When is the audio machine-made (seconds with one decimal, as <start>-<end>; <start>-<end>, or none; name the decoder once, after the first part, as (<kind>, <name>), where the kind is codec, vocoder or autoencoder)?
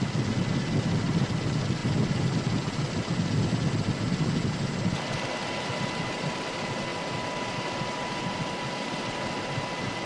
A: none